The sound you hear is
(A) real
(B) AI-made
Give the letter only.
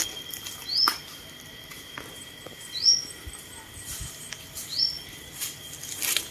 A